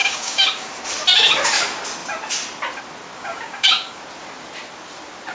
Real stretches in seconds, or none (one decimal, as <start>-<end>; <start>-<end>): 0.7-3.2; 4.0-5.3

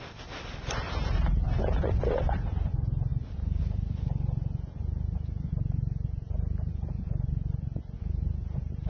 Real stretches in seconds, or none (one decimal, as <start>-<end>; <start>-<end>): 0.0-8.9

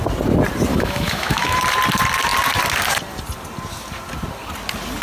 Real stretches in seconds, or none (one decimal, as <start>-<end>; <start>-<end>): 0.0-0.7; 1.6-5.0

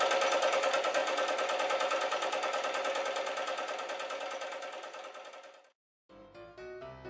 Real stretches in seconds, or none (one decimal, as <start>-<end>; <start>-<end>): 0.0-7.1

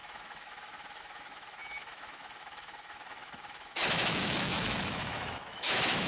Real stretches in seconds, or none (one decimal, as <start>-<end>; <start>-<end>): none

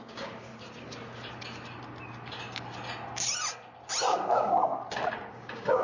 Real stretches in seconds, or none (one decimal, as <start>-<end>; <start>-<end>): 0.5-4.0; 4.7-5.3